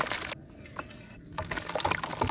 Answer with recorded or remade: recorded